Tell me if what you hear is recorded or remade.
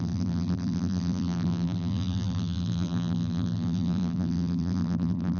remade